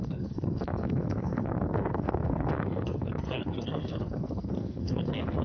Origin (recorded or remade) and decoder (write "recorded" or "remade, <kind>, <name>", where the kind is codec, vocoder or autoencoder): remade, codec, SNAC